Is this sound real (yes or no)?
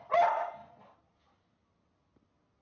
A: yes